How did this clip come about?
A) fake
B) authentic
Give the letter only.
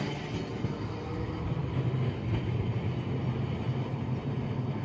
B